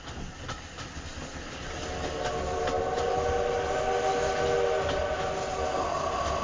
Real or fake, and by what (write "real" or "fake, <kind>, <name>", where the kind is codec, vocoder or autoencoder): real